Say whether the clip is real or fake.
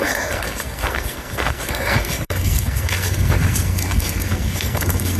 fake